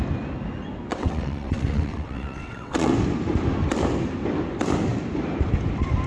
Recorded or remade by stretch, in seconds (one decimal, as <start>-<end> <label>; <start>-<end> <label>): 0.0-0.9 recorded; 0.9-2.9 remade; 2.9-6.1 recorded